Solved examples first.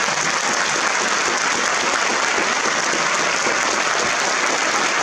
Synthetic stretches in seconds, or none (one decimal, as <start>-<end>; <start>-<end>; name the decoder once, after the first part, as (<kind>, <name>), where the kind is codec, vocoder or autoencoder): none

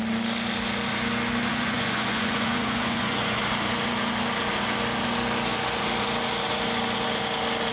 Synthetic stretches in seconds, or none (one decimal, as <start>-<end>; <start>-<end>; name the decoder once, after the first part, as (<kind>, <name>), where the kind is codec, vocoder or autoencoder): 1.5-3.4 (vocoder, Vocos)

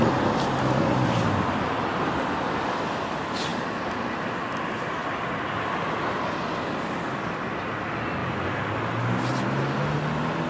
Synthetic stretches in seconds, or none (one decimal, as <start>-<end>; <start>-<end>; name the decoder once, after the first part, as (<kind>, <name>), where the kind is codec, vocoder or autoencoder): none

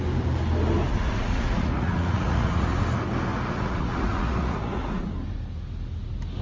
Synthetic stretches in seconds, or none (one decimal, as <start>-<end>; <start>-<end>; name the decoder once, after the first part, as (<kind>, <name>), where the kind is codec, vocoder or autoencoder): 0.9-2.8 (vocoder, Vocos); 3.3-5.1